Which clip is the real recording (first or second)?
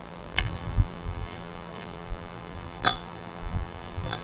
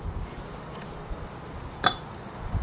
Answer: second